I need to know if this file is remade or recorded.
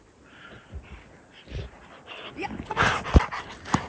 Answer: recorded